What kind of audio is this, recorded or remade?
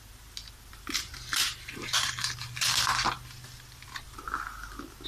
recorded